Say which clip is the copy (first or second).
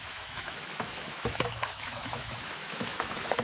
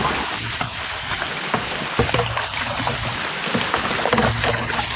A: first